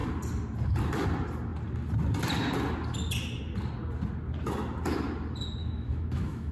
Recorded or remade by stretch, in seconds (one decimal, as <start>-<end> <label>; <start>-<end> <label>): 0.0-5.6 recorded; 5.6-6.5 remade